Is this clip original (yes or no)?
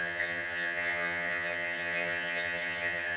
no